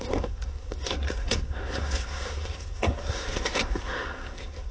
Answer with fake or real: fake